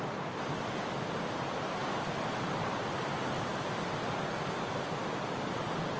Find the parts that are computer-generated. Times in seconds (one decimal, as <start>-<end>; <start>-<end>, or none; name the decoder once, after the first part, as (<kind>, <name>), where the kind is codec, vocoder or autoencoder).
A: none